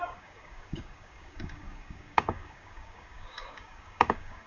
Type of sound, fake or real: fake